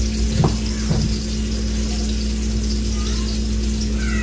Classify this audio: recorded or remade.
recorded